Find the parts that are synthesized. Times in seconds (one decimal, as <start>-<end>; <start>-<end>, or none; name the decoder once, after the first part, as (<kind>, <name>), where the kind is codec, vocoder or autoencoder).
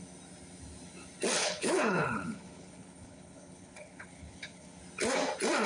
1.4-4.8 (codec, HILCodec)